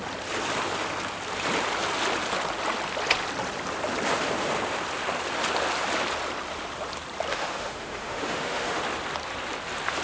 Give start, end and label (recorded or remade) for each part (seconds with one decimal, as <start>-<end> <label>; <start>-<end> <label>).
0.0-7.3 recorded; 7.3-8.8 remade; 8.8-10.0 recorded